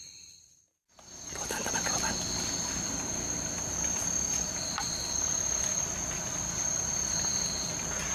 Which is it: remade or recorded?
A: recorded